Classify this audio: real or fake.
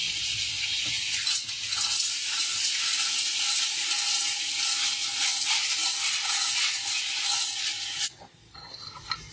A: real